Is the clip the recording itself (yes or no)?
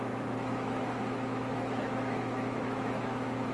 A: no